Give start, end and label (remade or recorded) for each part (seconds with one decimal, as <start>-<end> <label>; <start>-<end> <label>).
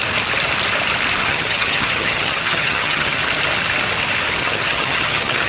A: 0.0-1.2 recorded; 1.2-3.2 remade; 3.2-4.4 recorded; 4.4-5.5 remade